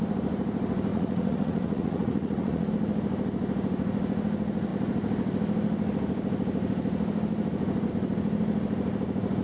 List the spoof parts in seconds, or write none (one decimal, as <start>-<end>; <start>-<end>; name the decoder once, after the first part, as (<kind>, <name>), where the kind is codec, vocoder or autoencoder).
0.9-2.7 (vocoder, Vocos)